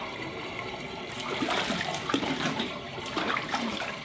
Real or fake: fake